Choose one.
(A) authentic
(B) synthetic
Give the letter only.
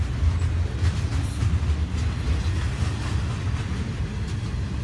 A